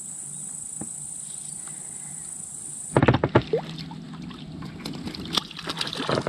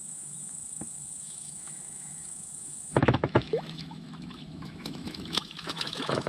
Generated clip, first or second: second